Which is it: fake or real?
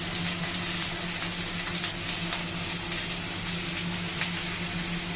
real